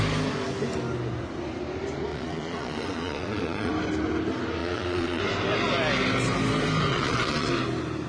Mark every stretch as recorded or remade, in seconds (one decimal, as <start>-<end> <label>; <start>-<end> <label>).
0.0-2.1 recorded; 2.1-3.7 remade; 3.7-4.6 recorded; 4.6-5.2 remade; 5.2-6.9 recorded; 6.9-7.5 remade; 7.5-8.1 recorded